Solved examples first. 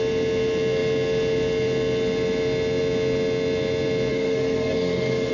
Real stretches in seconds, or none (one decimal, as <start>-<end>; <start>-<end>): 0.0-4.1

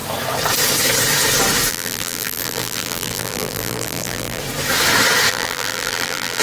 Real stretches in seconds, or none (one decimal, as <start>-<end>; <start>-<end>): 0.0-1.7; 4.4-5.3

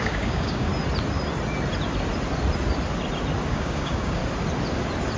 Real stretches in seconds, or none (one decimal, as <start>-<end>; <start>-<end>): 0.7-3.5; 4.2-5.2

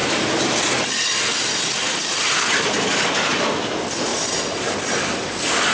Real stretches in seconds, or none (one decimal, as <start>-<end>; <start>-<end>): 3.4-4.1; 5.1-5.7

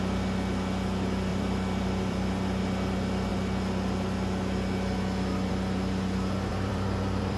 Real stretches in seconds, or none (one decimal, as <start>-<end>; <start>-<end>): 0.0-1.3; 2.6-6.5

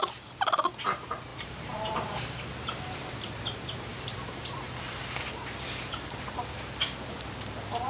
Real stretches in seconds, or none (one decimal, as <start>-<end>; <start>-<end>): 0.0-1.3; 2.5-3.9; 5.3-7.9

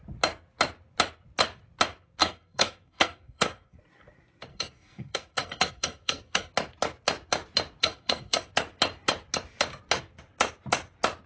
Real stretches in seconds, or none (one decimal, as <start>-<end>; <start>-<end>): 0.0-2.2; 3.8-4.5; 6.5-7.8; 8.5-11.3